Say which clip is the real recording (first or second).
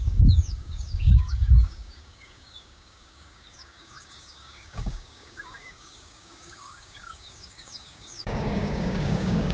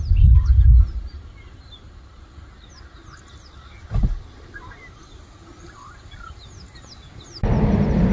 second